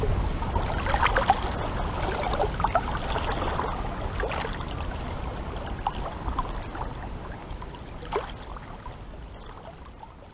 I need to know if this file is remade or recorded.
recorded